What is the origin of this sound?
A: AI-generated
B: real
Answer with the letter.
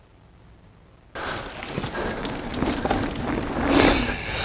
B